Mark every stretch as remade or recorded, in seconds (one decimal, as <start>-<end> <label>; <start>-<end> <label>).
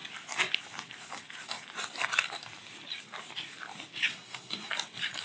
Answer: 0.0-4.1 recorded; 4.1-4.7 remade; 4.7-5.2 recorded